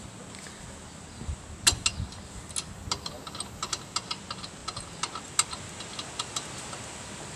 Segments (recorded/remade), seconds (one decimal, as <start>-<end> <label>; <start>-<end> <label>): 0.0-7.4 recorded